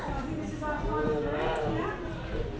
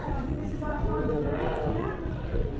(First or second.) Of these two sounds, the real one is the first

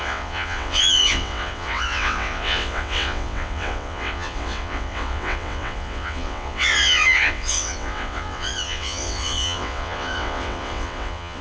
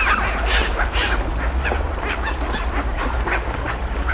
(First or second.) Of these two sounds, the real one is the second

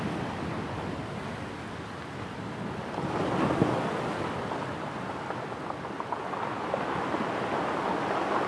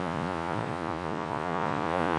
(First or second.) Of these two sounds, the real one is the first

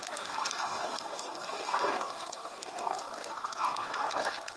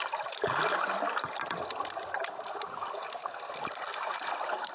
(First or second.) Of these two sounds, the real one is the second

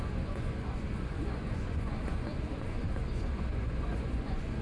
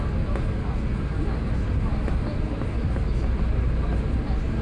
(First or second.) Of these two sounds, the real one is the second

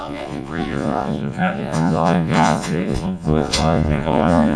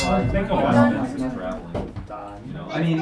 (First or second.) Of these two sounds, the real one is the second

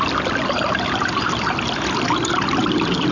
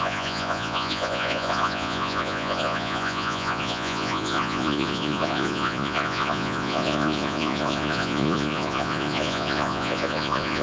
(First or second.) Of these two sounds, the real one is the first